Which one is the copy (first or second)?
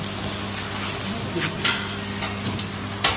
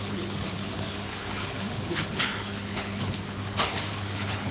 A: second